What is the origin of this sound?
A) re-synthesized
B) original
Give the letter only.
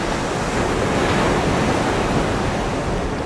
B